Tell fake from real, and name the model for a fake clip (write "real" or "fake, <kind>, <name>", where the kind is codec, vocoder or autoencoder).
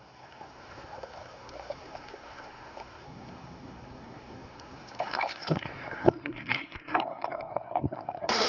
fake, codec, SNAC